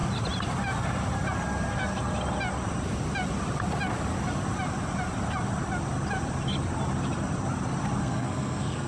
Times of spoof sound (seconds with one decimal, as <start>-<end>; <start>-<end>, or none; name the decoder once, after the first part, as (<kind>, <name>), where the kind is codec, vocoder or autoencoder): 8.0-8.9 (codec, SNAC)

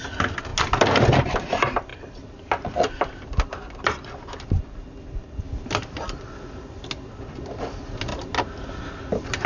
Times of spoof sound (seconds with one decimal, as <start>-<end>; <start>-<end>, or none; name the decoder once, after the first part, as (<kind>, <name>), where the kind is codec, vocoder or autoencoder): none

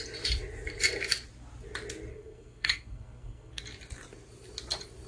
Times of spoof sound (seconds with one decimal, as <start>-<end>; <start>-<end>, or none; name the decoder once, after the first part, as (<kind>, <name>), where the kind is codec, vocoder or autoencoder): 2.1-3.6 (codec, SNAC)

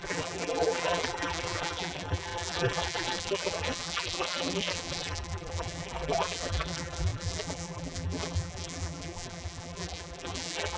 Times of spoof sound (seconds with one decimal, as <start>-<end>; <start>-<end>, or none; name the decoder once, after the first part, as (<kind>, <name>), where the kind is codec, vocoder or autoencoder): 0.0-10.8 (vocoder, BigVGAN v2)